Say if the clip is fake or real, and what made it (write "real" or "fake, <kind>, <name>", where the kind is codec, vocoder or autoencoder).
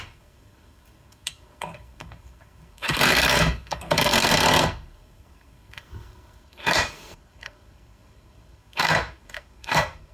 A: fake, codec, SNAC